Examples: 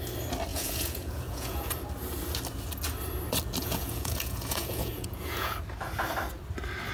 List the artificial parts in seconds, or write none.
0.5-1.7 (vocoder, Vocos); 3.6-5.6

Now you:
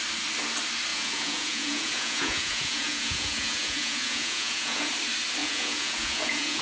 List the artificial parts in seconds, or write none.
0.9-4.9 (vocoder, Vocos); 5.4-6.6

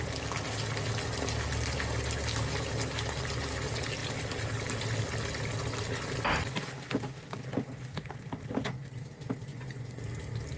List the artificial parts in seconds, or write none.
9.5-10.0 (vocoder, Vocos)